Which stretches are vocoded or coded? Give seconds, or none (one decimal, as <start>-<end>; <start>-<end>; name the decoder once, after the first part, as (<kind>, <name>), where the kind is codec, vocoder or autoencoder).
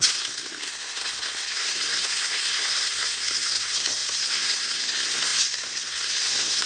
0.0-6.7 (codec, SNAC)